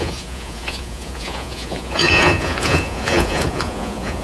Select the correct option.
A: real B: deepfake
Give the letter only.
B